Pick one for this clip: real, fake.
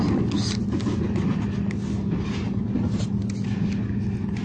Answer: real